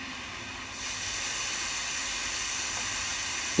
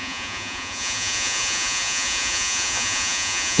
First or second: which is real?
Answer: first